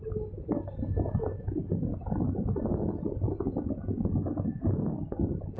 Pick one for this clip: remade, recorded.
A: recorded